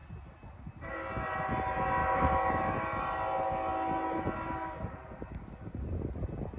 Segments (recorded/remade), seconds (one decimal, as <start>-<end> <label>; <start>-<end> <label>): 0.0-2.0 recorded; 2.0-2.5 remade; 2.5-6.6 recorded